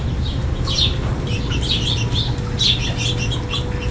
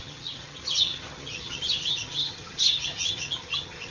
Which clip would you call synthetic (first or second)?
second